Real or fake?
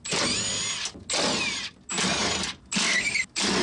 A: real